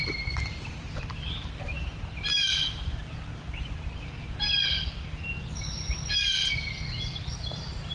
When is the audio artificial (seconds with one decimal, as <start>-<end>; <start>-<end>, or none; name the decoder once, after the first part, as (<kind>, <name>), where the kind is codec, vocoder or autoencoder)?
0.0-1.2 (vocoder, BigVGAN v2); 2.3-3.0